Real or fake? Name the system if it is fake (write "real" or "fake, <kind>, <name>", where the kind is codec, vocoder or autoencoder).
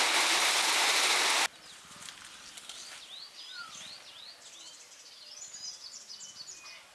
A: real